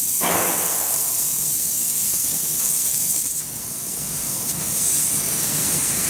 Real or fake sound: fake